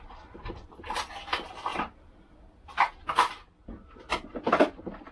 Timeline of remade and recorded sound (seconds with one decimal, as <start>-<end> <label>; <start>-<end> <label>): 0.0-1.7 remade; 1.7-3.9 recorded; 3.9-5.1 remade